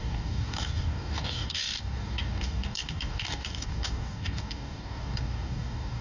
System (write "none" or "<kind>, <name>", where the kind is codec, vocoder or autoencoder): codec, DAC